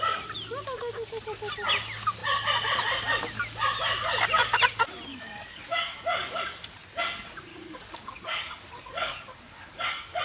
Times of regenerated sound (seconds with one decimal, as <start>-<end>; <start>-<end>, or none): 5.1-6.4; 7.5-10.2

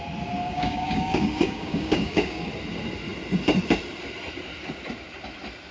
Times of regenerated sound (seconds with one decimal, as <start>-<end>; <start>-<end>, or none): 0.4-2.5

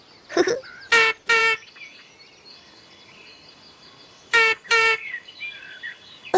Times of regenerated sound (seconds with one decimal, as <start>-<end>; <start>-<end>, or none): 1.4-2.1; 2.5-6.4

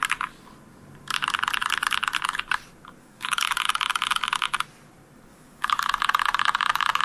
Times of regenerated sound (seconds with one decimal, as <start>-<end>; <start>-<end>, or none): 3.0-3.6; 5.3-5.9

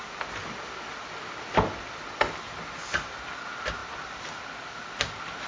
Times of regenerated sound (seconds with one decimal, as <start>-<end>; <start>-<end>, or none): none